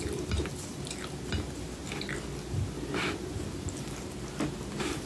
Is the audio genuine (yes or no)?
yes